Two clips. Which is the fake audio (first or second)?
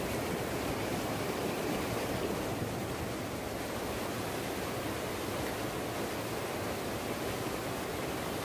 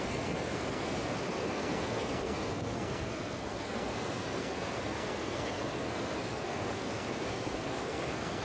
second